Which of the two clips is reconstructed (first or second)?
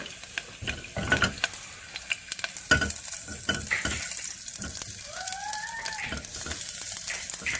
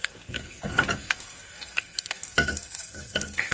second